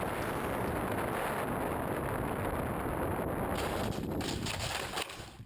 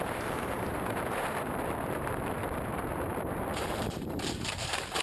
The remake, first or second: second